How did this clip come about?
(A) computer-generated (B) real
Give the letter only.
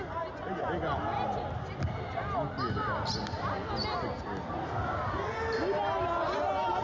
B